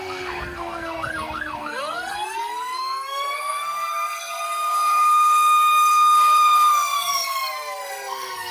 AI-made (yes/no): yes